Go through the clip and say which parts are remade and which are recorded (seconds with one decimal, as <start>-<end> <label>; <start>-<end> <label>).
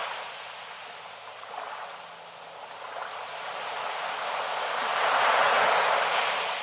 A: 0.0-6.6 recorded